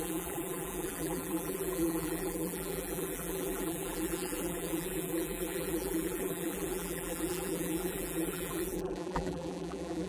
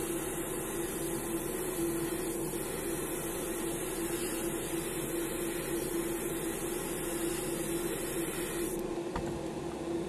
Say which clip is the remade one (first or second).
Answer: first